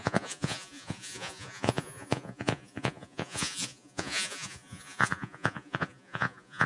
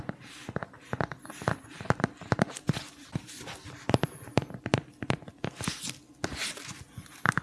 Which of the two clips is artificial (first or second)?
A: first